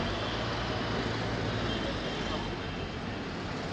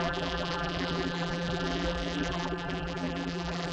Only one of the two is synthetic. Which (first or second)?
second